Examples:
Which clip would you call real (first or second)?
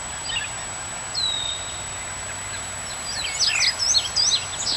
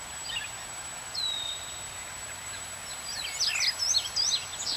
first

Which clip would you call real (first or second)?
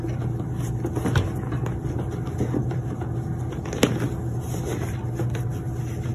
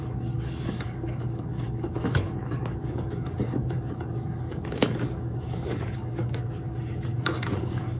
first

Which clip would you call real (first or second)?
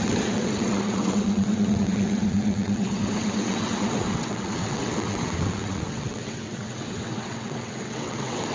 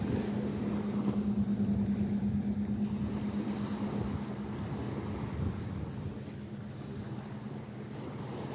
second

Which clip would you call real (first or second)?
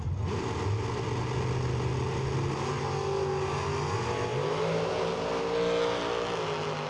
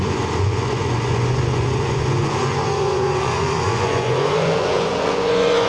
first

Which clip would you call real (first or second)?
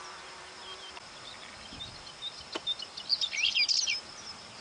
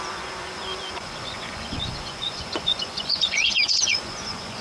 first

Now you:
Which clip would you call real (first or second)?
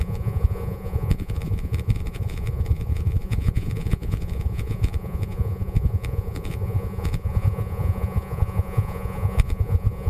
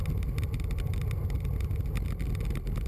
second